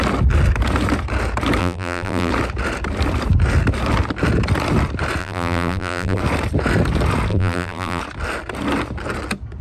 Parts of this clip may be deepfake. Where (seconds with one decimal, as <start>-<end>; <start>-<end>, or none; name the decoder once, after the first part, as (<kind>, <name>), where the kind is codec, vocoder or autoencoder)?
1.6-2.3 (vocoder, BigVGAN v2); 5.2-6.2; 7.3-8.0